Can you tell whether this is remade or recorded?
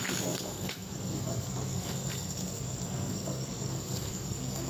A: remade